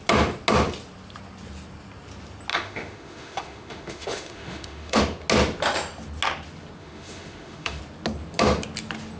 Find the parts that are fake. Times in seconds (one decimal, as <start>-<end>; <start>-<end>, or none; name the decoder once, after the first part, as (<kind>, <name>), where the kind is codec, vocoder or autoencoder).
2.5-5.0 (autoencoder, DAC-VAE); 6.8-7.8